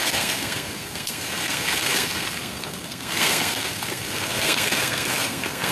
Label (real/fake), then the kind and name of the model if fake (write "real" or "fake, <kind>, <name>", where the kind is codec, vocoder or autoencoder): fake, codec, SNAC